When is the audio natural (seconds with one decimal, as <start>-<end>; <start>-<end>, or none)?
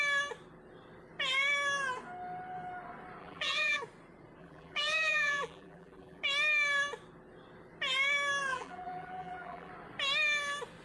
0.0-3.2; 3.8-4.4; 6.2-8.5; 9.7-10.8